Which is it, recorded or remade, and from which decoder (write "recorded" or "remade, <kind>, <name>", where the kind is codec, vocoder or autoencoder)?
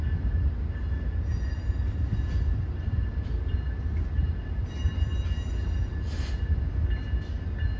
recorded